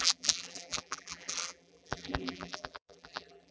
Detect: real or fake fake